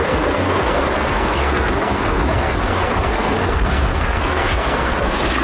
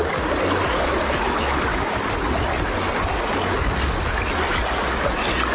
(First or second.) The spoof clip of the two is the first